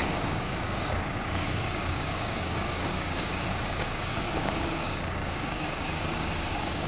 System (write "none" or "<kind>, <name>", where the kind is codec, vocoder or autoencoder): codec, DAC